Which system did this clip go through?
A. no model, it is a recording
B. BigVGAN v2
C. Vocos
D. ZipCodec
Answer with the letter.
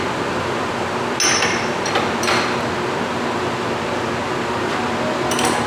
A